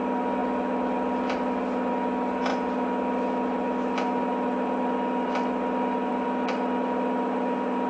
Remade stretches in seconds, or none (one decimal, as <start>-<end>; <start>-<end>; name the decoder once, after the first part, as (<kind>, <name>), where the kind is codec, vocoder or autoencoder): none